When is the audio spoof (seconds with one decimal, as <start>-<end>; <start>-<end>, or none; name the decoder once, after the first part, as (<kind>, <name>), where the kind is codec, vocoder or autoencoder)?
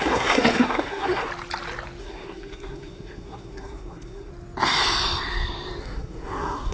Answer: 0.0-1.3 (codec, SNAC); 2.0-4.3; 5.8-6.7